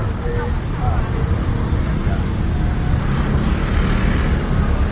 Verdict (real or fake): real